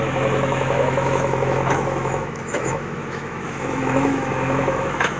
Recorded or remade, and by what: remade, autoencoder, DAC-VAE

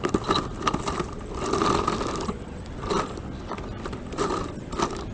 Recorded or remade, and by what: recorded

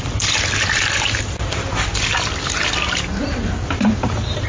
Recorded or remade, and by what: recorded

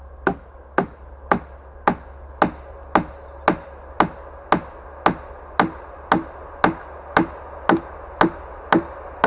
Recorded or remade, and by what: recorded